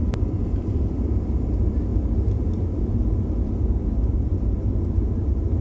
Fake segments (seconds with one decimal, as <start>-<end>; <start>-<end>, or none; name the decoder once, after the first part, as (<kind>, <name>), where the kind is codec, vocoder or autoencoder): 0.0-1.9 (vocoder, BigVGAN v2); 2.8-5.6